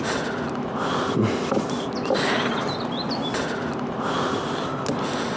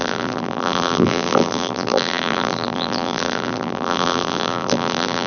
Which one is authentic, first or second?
first